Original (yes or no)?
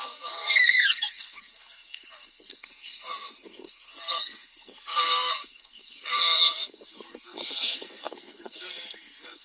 no